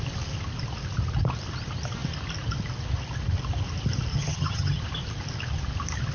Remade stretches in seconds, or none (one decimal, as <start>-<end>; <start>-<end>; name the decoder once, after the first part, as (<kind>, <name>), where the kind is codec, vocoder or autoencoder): 4.1-4.8 (vocoder, HiFi-GAN)